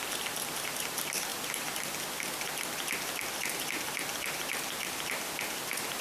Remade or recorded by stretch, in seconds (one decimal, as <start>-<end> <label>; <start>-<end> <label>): 0.0-6.0 recorded